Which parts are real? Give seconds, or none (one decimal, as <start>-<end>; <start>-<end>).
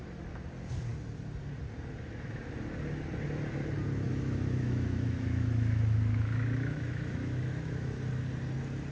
0.0-4.1; 8.0-8.9